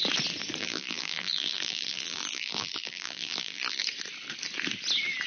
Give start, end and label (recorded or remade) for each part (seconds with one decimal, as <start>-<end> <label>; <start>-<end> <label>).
0.0-0.6 recorded; 0.6-3.8 remade; 3.8-5.3 recorded